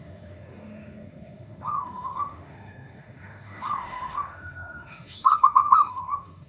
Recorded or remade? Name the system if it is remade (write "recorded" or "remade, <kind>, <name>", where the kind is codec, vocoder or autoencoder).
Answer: remade, autoencoder, DAC-VAE